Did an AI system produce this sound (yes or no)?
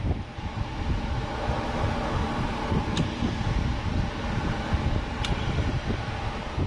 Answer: no